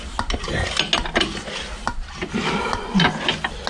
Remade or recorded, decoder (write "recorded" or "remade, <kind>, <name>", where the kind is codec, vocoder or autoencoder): recorded